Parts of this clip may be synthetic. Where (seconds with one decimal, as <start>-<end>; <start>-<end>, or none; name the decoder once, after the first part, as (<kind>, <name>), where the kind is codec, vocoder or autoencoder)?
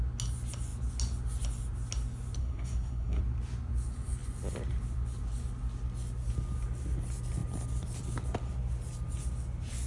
2.4-3.2 (codec, SNAC)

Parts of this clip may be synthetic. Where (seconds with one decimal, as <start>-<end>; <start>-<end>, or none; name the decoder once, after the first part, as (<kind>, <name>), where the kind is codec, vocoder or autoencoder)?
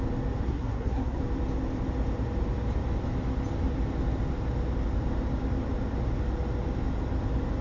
0.5-1.2 (codec, SNAC)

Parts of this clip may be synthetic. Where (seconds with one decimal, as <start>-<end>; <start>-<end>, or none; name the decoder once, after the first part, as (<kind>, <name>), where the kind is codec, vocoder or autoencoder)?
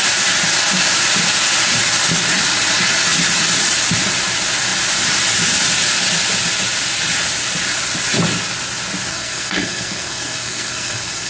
9.1-11.3 (codec, SNAC)